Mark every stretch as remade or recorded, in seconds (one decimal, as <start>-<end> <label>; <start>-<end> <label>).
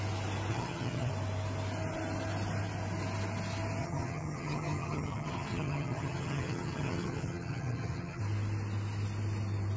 0.0-0.5 recorded; 0.5-1.1 remade; 1.1-3.8 recorded; 3.8-8.2 remade; 8.2-9.8 recorded